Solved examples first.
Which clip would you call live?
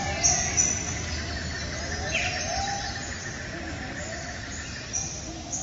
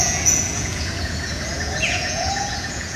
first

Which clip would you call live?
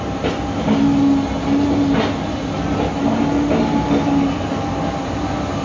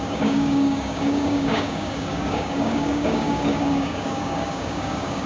first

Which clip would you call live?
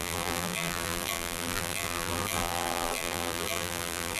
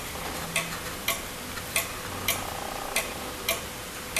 second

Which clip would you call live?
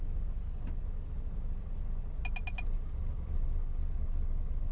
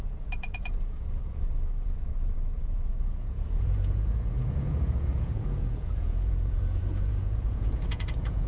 first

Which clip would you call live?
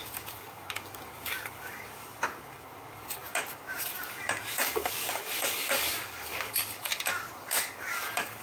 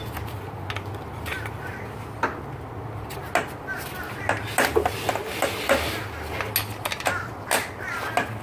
second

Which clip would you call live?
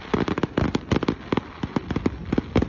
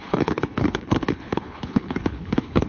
first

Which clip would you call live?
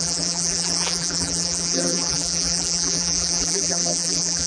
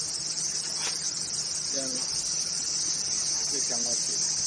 second